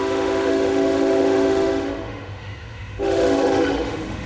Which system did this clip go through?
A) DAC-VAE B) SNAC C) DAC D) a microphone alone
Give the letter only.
A